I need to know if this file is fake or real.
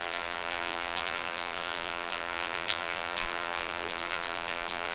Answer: fake